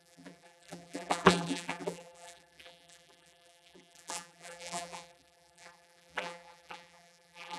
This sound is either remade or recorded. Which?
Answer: remade